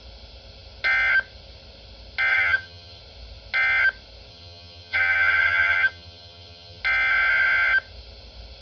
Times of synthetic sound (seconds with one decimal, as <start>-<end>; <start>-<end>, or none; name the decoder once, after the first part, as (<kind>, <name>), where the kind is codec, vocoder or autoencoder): 2.3-3.0 (vocoder, HiFi-GAN); 4.3-6.8